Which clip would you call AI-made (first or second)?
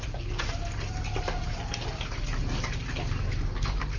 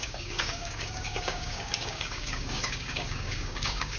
second